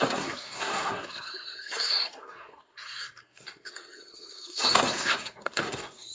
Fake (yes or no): yes